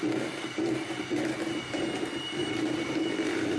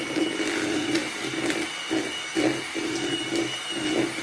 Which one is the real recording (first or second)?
second